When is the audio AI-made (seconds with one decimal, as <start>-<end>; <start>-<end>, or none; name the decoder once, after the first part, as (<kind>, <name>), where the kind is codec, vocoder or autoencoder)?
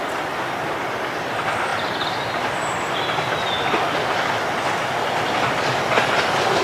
1.7-2.8 (vocoder, BigVGAN v2)